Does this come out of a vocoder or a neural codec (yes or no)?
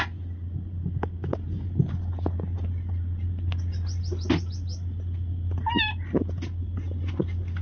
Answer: no